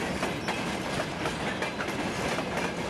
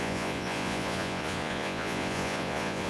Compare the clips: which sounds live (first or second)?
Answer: first